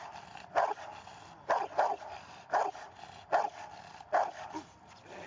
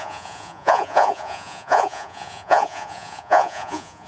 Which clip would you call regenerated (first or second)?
second